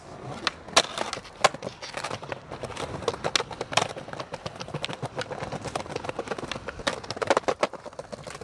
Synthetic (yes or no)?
no